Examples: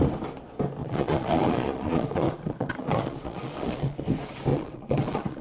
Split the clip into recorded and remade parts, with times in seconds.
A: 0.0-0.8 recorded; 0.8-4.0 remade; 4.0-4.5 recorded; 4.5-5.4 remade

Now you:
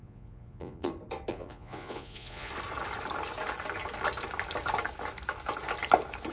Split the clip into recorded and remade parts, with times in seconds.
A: 0.0-0.9 remade; 0.9-1.3 recorded; 1.3-2.5 remade; 2.5-6.3 recorded

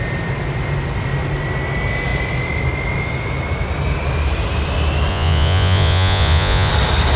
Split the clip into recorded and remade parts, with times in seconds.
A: 0.0-5.1 recorded; 5.1-6.7 remade; 6.7-7.2 recorded

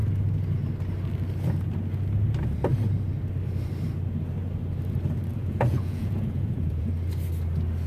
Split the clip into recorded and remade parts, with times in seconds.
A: 0.0-5.3 recorded; 5.3-6.9 remade; 6.9-7.9 recorded

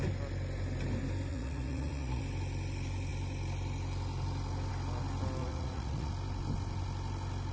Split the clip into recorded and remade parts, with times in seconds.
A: 0.0-1.3 recorded; 1.3-2.2 remade; 2.2-5.4 recorded; 5.4-6.1 remade; 6.1-7.5 recorded